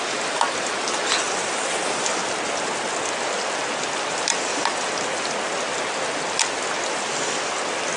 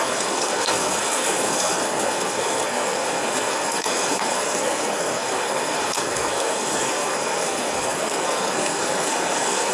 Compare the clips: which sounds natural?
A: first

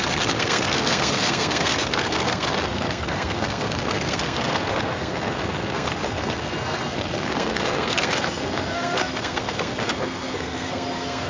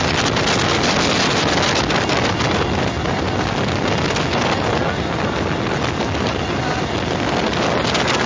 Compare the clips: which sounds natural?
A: second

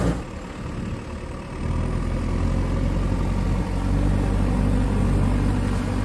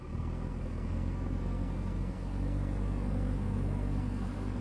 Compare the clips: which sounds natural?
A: first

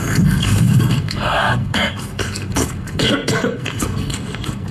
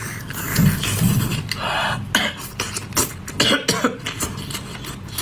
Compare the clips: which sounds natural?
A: second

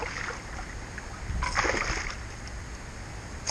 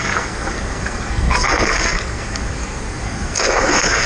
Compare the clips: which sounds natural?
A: first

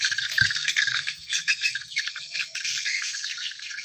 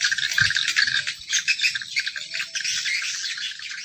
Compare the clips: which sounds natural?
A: second